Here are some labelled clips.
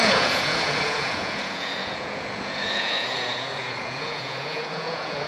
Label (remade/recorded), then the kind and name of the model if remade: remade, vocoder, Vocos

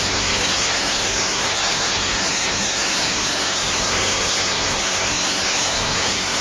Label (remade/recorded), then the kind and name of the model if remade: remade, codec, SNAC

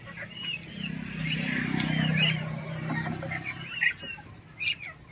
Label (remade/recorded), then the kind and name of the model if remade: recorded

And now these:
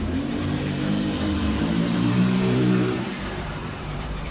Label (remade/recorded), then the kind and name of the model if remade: remade, vocoder, BigVGAN v2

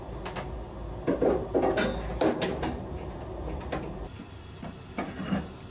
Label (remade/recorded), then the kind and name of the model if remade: recorded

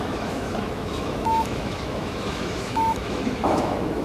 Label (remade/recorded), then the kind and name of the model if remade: remade, autoencoder, DAC-VAE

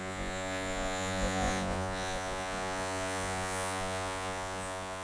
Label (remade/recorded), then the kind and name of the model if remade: remade, vocoder, Vocos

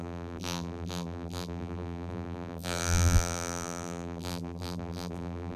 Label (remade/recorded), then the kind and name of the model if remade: remade, vocoder, BigVGAN v2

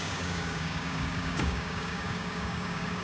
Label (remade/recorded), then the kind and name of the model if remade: remade, codec, DAC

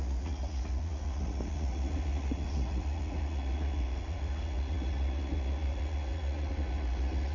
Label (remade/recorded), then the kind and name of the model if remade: remade, vocoder, Vocos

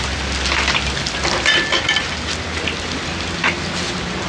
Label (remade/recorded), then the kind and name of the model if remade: recorded